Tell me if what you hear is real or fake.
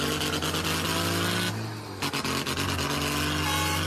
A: real